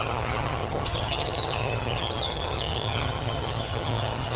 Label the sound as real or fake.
fake